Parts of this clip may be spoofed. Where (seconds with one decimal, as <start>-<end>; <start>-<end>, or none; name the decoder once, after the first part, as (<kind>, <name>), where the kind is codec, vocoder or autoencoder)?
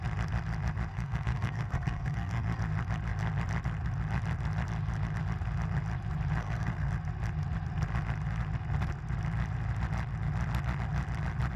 0.9-2.6 (codec, SNAC); 6.4-6.9